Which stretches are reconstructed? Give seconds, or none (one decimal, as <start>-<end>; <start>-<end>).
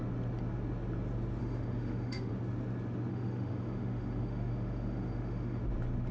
1.4-2.3; 3.1-5.6